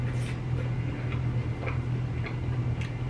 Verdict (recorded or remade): recorded